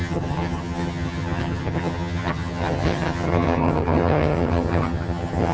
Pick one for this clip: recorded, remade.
remade